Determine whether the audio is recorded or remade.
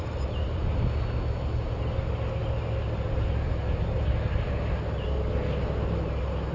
recorded